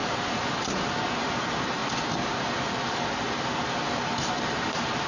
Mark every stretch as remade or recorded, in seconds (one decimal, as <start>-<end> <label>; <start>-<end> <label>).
0.0-1.8 remade; 1.8-3.5 recorded; 3.5-5.1 remade